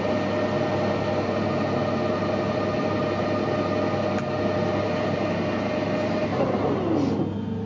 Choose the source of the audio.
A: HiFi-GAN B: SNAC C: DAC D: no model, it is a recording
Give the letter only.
D